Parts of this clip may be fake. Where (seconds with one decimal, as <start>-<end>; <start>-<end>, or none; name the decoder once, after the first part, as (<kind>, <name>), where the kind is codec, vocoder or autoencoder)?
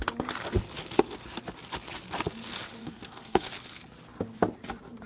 2.8-3.5 (codec, SNAC)